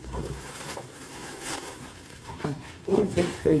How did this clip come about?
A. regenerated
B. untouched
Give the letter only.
A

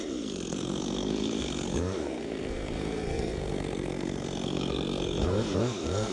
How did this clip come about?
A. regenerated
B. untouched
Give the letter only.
A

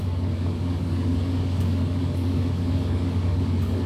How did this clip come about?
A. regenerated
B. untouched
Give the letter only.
A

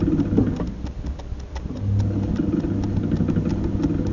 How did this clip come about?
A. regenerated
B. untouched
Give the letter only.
B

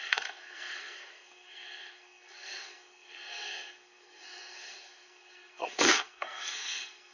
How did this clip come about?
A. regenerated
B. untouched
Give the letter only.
A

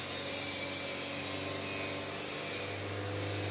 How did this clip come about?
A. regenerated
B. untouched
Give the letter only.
B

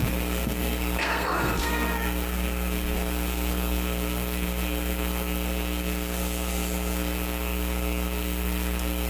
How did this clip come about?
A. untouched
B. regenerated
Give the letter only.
B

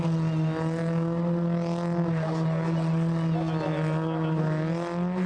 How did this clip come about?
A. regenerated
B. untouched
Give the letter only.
B